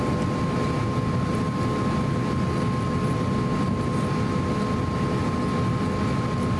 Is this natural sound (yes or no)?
yes